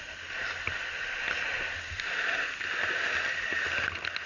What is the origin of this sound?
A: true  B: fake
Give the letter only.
A